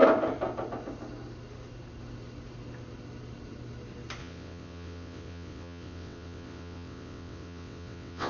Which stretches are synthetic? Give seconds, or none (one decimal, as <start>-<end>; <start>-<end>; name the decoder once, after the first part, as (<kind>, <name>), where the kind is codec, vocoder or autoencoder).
4.2-8.3 (vocoder, WaveNeXt)